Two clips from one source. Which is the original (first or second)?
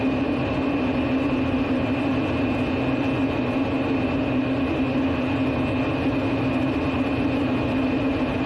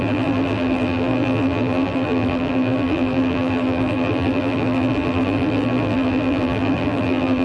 first